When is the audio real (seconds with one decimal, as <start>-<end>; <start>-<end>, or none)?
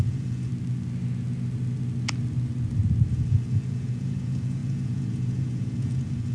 0.5-3.1